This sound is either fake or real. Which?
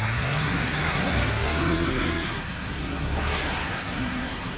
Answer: fake